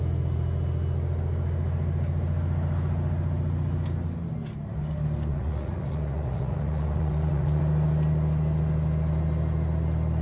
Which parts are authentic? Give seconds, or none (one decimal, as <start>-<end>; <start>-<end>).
0.0-5.3; 7.6-10.2